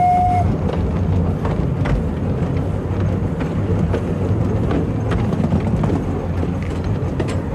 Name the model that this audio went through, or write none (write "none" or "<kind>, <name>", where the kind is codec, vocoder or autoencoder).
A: none